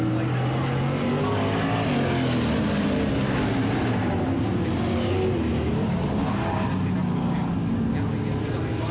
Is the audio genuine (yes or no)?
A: yes